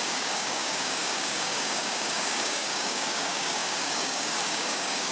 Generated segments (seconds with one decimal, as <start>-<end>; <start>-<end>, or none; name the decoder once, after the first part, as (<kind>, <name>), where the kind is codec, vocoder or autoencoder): 0.0-5.1 (codec, DAC)